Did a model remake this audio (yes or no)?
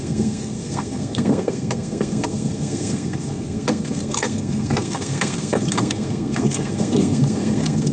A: yes